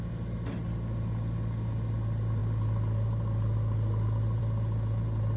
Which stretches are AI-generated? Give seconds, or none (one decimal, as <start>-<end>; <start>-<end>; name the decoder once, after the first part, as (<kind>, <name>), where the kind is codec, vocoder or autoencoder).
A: none

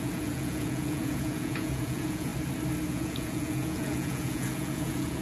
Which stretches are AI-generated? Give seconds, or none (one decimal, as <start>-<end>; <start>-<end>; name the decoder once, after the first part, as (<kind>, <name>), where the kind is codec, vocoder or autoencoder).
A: 0.0-2.3 (vocoder, Vocos); 2.9-5.2

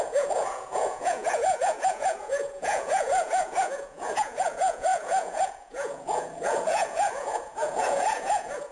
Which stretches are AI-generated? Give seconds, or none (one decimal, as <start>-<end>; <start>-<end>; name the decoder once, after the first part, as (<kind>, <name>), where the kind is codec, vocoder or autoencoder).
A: 0.0-8.7 (vocoder, Vocos)